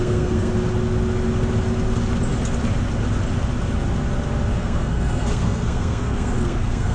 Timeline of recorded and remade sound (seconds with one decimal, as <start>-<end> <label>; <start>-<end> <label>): 0.0-0.5 remade; 0.5-4.6 recorded; 4.6-6.9 remade